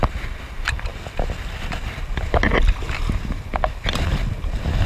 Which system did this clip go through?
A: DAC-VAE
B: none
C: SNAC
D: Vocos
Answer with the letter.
B